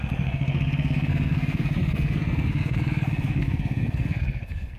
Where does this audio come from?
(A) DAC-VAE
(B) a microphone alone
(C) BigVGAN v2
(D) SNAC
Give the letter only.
D